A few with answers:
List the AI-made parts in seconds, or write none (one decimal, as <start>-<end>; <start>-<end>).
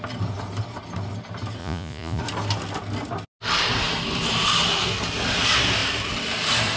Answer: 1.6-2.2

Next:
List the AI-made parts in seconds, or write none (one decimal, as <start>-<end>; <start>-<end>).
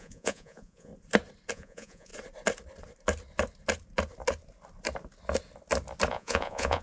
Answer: 0.0-0.9; 1.5-2.1; 6.1-6.8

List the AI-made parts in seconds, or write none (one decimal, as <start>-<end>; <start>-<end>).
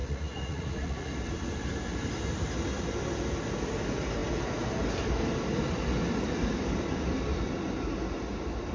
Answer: 0.0-1.1